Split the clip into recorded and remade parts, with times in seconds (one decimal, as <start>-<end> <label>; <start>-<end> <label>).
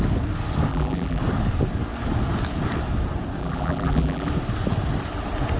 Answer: 0.0-0.7 recorded; 0.7-1.2 remade; 1.2-3.4 recorded; 3.4-4.3 remade; 4.3-5.6 recorded